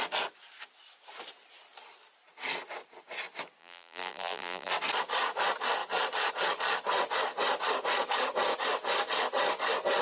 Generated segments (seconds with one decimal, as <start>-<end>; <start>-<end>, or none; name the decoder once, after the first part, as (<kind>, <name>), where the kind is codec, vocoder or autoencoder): 3.6-4.7 (vocoder, BigVGAN v2)